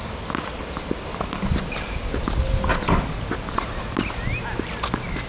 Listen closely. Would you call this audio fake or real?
real